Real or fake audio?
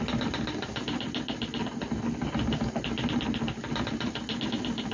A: real